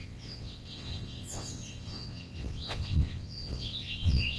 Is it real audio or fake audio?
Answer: fake